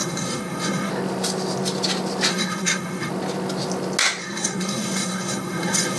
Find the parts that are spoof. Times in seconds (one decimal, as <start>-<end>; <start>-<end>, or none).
0.0-0.9; 2.3-3.1; 4.2-6.0